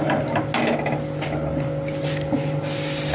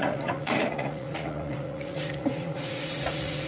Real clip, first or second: first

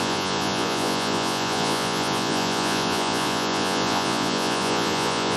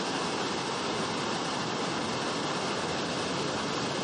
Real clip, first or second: second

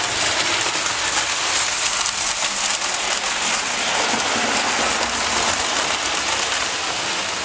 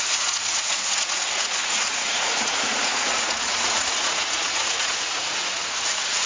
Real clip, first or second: first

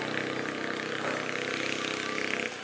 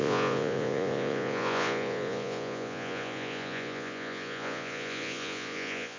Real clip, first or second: first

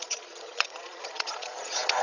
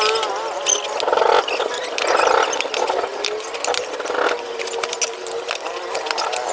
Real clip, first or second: second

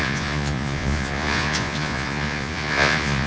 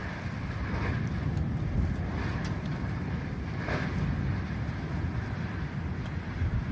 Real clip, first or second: second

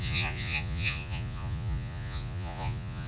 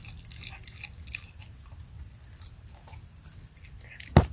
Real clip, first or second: second